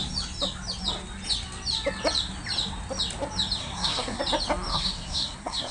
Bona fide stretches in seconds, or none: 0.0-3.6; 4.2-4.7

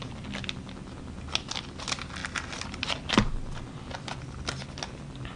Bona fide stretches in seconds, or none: 0.0-5.4

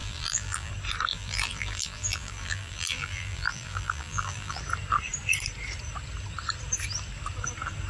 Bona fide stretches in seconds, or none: 0.7-1.1; 4.6-7.9

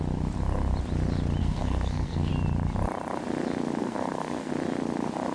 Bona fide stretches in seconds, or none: 0.0-1.4; 2.3-3.8; 4.5-5.3

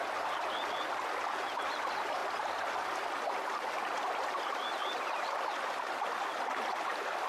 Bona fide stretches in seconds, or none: 0.0-7.3